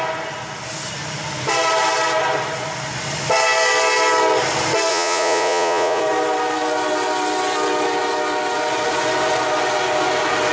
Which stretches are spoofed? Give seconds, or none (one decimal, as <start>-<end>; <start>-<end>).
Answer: 4.9-6.0